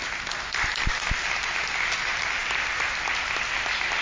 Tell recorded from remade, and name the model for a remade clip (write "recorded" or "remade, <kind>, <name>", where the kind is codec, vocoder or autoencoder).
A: recorded